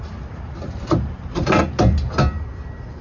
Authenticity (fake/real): real